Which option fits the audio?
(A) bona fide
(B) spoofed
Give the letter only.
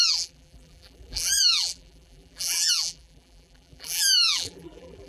B